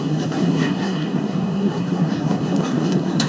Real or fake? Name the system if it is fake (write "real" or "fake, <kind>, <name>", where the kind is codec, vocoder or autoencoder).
fake, codec, SNAC